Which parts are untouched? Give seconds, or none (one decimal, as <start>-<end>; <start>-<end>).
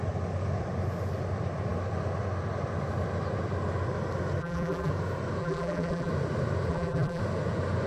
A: 0.0-4.4; 4.9-5.4; 6.1-6.7; 7.2-7.9